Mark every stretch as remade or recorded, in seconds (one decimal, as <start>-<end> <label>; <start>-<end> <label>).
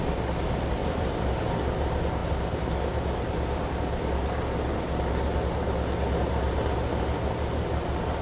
0.0-0.8 recorded; 0.8-1.3 remade; 1.3-8.2 recorded